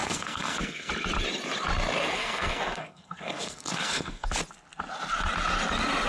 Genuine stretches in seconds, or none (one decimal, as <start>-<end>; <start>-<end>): 0.9-2.0; 4.3-6.1